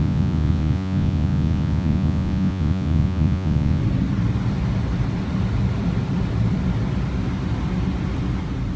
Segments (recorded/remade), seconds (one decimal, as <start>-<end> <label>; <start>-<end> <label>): 0.0-3.8 remade; 3.8-8.8 recorded